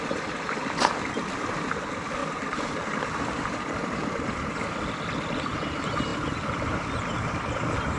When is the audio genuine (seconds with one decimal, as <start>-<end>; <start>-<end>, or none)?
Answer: 0.0-8.0